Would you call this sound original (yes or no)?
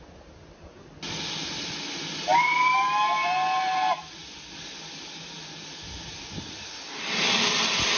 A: yes